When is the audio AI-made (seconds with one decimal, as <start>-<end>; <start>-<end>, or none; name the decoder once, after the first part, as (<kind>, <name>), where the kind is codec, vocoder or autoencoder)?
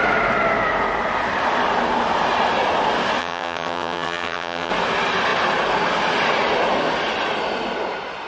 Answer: 3.2-4.7 (vocoder, HiFi-GAN)